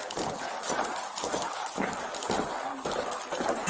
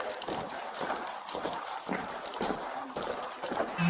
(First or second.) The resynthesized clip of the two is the second